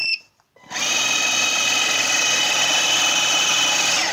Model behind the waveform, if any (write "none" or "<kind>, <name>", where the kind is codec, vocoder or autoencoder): vocoder, BigVGAN v2